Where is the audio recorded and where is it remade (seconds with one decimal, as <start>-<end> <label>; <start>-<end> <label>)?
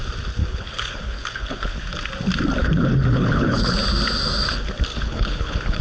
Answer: 0.0-0.4 recorded; 0.4-1.8 remade; 1.8-2.6 recorded; 2.6-3.8 remade; 3.8-4.9 recorded; 4.9-5.8 remade